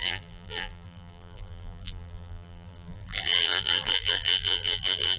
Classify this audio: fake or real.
fake